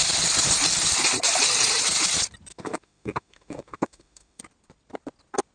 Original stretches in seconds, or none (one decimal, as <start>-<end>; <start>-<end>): 0.0-2.5; 4.4-5.5